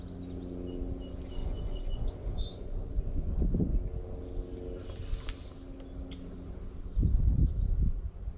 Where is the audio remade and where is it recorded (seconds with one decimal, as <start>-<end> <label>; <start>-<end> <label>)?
0.0-1.4 recorded; 1.4-3.4 remade; 3.4-8.4 recorded